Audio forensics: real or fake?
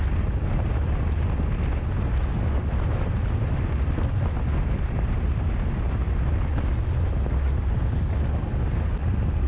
real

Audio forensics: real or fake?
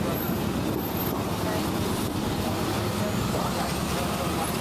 real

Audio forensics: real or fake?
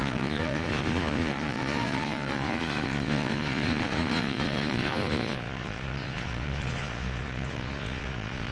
fake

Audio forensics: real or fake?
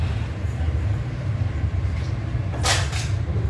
fake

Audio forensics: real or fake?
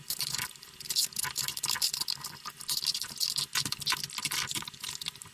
real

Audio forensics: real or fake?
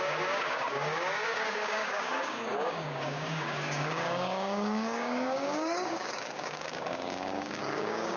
fake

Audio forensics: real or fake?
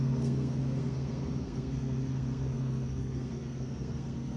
fake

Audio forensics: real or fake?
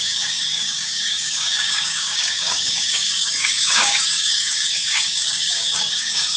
fake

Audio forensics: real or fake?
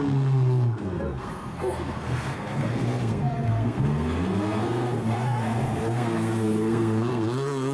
fake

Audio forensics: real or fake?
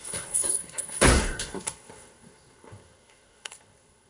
fake